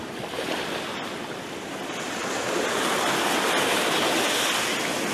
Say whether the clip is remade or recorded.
recorded